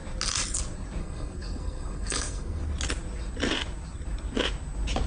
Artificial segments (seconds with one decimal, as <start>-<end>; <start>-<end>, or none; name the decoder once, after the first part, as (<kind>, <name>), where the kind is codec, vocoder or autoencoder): 1.0-2.6 (codec, SNAC)